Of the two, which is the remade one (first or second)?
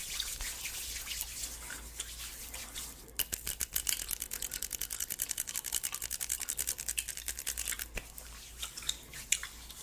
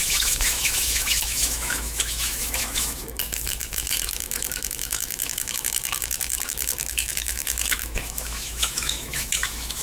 second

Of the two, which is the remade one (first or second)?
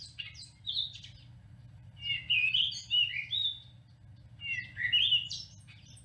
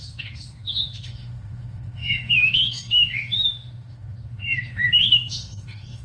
second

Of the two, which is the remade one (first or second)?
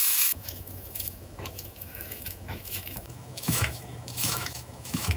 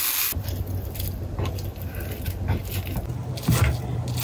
first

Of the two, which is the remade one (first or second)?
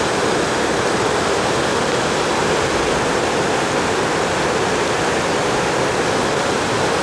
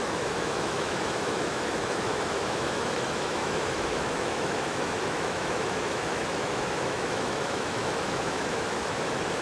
second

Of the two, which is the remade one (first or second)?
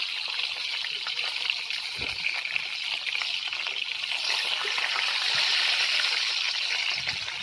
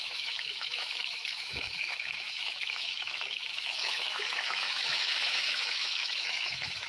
second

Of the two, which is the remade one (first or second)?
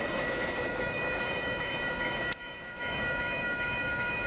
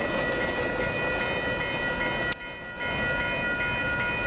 first